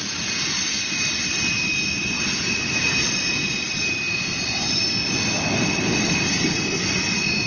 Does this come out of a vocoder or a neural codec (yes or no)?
no